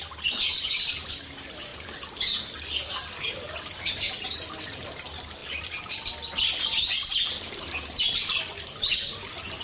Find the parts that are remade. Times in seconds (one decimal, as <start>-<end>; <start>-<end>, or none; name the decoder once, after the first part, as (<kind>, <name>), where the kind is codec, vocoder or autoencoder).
none